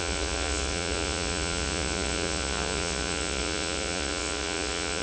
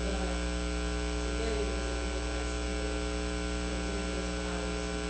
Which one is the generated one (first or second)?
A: first